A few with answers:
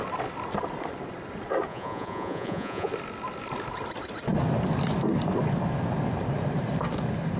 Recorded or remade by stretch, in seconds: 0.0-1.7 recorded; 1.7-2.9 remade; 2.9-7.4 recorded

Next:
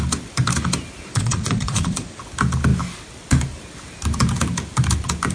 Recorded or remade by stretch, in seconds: 0.0-1.1 recorded; 1.1-2.2 remade; 2.2-5.3 recorded

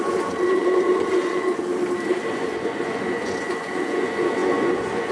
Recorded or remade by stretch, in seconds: 0.0-1.5 remade; 1.5-2.3 recorded; 2.3-5.1 remade

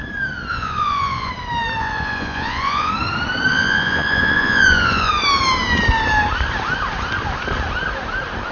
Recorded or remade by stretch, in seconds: 0.0-0.5 recorded; 0.5-1.3 remade; 1.3-1.8 recorded; 1.8-2.9 remade; 2.9-3.5 recorded; 3.5-5.1 remade; 5.1-8.5 recorded

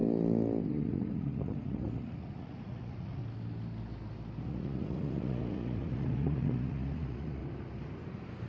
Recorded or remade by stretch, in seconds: 0.0-0.7 recorded; 0.7-3.2 remade; 3.2-4.4 recorded; 4.4-7.4 remade; 7.4-8.5 recorded

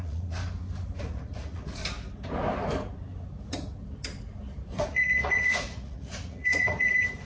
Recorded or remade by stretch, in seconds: 0.0-0.4 remade; 0.4-1.0 recorded; 1.0-1.8 remade; 1.8-4.7 recorded; 4.7-7.3 remade

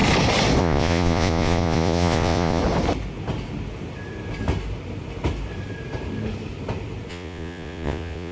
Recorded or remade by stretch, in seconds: 0.0-0.6 recorded; 0.6-2.6 remade; 2.6-7.1 recorded; 7.1-8.3 remade

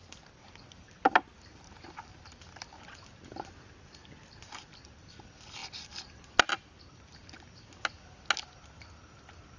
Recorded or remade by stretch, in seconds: 0.0-9.6 recorded